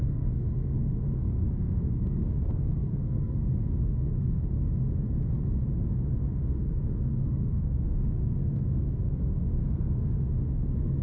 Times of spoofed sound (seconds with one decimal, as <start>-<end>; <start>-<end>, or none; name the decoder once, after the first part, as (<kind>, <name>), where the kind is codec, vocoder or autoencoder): 0.0-4.4 (codec, SNAC); 6.2-11.0